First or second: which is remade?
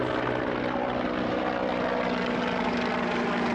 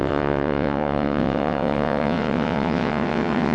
second